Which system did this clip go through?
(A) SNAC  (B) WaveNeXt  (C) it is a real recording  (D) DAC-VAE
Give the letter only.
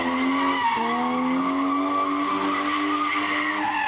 C